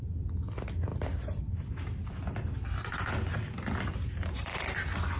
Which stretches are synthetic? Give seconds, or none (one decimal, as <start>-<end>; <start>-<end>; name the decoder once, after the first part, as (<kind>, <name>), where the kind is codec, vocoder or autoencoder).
none